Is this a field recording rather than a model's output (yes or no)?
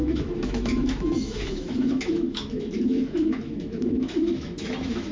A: no